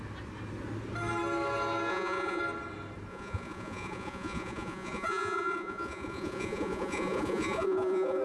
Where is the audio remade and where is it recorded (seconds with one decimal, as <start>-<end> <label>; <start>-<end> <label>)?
0.0-1.9 recorded; 1.9-2.4 remade; 2.4-3.1 recorded; 3.1-8.2 remade